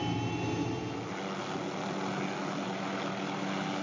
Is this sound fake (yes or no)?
no